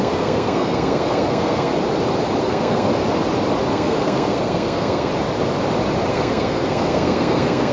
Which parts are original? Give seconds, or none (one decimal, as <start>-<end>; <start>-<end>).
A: 1.7-2.4; 2.9-3.7; 5.1-6.1